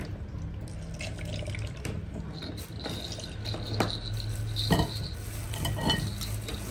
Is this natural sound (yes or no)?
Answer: yes